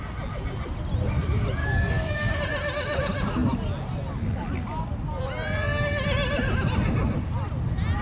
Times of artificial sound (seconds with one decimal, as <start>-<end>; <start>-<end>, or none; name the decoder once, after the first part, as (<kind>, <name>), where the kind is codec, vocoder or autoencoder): 1.6-2.4 (codec, DAC)